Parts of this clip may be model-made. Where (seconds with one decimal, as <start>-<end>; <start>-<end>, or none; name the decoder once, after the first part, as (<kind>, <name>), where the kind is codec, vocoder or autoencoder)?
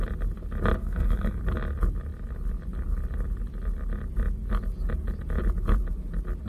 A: 0.8-1.4 (codec, SNAC)